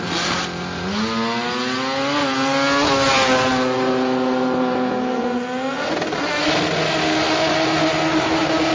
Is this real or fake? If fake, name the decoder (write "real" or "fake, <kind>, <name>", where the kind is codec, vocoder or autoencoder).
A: real